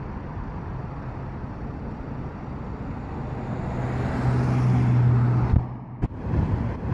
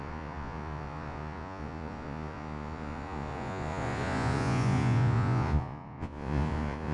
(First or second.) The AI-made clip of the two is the second